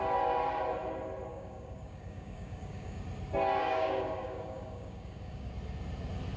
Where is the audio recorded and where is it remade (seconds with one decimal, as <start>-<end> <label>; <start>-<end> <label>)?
0.0-1.3 recorded; 1.3-3.0 remade; 3.0-3.6 recorded; 3.6-5.5 remade; 5.5-6.4 recorded

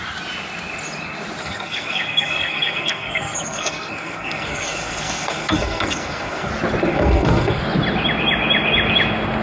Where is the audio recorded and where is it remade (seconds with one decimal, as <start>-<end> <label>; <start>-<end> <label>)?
0.0-1.4 recorded; 1.4-6.5 remade; 6.5-6.9 recorded; 6.9-7.6 remade; 7.6-9.4 recorded